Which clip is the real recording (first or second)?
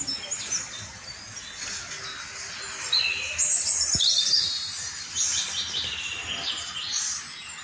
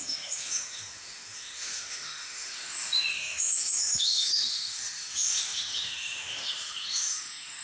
first